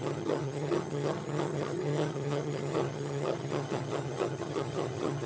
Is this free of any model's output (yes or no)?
no